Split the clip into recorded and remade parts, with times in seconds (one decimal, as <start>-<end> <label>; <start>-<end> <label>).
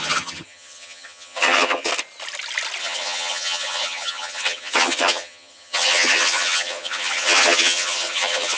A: 0.0-1.9 remade; 1.9-2.8 recorded; 2.8-8.6 remade